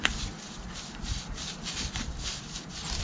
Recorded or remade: remade